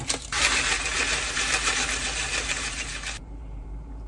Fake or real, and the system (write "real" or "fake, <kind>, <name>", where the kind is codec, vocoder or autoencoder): fake, vocoder, BigVGAN v2